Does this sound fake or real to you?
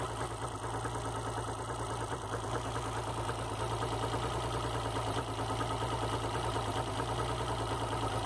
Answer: real